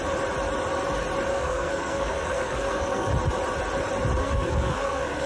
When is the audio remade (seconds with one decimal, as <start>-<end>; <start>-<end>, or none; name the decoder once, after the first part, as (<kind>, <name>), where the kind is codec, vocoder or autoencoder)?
1.3-3.1 (codec, SNAC); 4.2-5.3